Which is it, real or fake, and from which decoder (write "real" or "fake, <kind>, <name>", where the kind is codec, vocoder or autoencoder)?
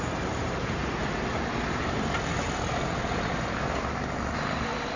fake, vocoder, BigVGAN v2